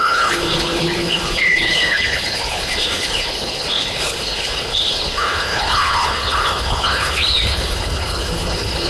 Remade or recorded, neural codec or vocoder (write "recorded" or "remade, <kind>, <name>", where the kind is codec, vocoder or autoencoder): remade, codec, HILCodec